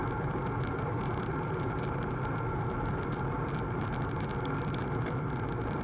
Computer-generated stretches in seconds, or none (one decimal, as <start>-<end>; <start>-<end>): none